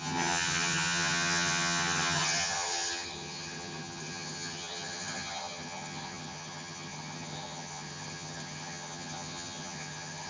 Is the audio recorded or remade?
remade